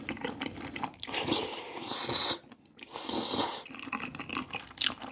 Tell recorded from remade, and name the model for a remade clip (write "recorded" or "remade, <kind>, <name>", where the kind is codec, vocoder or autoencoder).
recorded